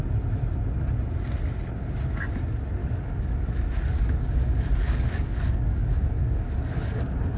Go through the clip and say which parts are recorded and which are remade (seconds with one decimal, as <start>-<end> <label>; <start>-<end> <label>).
0.0-2.8 recorded; 2.8-7.0 remade; 7.0-7.4 recorded